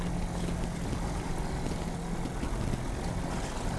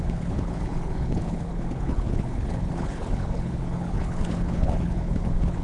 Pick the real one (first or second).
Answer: first